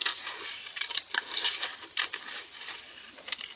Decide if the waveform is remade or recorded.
recorded